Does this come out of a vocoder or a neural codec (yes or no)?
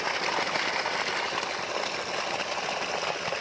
no